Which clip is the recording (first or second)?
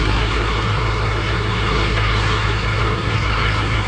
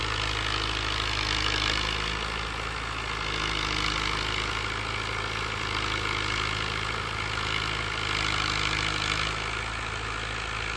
second